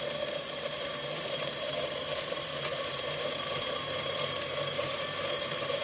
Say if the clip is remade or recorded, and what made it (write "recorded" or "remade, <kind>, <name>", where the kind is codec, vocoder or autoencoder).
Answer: remade, vocoder, BigVGAN v2